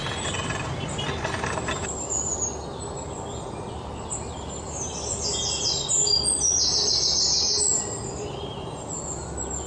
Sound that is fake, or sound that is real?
real